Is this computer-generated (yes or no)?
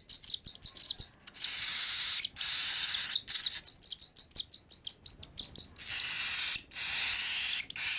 no